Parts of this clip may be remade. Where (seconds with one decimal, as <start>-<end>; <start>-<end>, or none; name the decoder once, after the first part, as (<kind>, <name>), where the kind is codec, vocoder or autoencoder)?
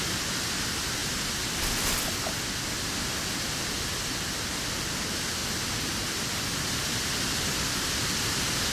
none